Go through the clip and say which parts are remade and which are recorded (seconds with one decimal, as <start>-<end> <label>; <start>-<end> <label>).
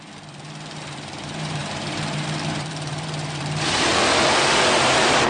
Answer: 0.0-3.9 remade; 3.9-4.8 recorded; 4.8-5.3 remade